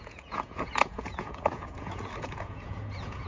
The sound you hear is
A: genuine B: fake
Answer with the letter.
B